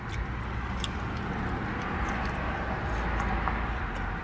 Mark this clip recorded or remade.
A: recorded